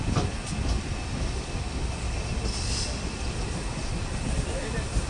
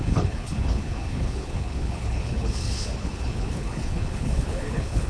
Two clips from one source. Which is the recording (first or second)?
first